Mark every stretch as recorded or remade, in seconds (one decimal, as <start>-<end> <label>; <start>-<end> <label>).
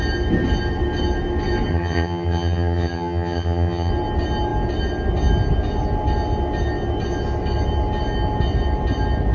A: 0.0-1.7 recorded; 1.7-3.9 remade; 3.9-9.3 recorded